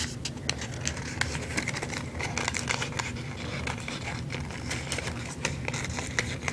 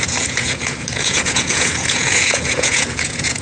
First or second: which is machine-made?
second